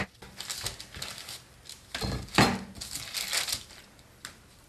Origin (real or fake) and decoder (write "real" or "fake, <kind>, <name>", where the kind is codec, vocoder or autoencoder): real